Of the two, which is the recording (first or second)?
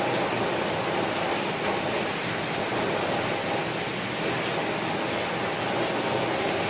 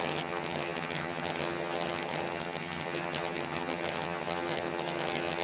first